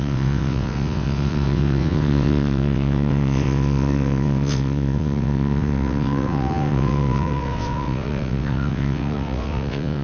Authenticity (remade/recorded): remade